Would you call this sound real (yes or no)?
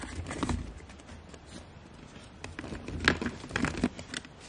yes